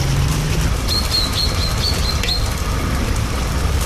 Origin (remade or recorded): recorded